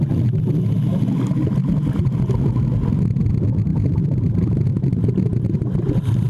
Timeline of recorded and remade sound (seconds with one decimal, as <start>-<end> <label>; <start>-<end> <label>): 0.0-3.7 recorded; 3.7-5.6 remade; 5.6-6.3 recorded